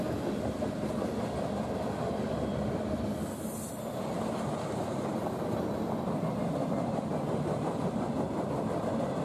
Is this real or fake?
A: real